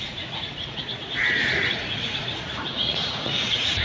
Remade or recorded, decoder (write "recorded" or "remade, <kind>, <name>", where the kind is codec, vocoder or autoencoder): remade, vocoder, Vocos